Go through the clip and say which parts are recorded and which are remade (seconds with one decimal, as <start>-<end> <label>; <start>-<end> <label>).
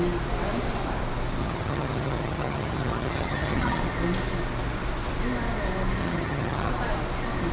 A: 0.0-1.4 recorded; 1.4-3.8 remade; 3.8-6.0 recorded; 6.0-6.7 remade; 6.7-7.5 recorded